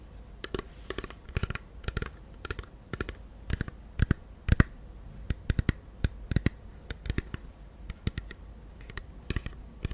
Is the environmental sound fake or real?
real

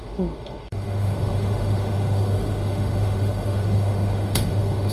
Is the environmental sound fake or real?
fake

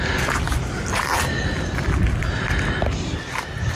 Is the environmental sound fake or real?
real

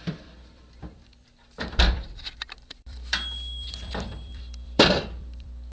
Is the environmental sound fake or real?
fake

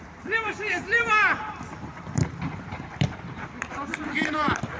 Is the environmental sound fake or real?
fake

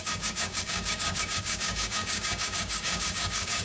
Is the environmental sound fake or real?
fake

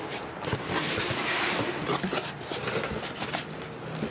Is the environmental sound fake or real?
real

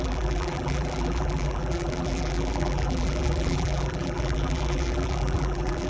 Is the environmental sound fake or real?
fake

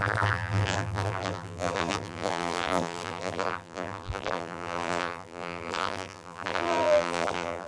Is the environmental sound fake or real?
fake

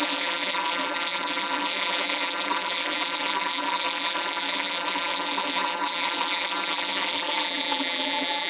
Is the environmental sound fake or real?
fake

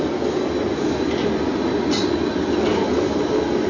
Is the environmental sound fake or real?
real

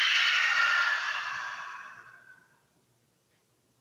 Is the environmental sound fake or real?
real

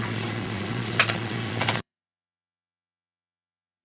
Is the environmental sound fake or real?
fake